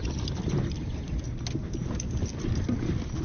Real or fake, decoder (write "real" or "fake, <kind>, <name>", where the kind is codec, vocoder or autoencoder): real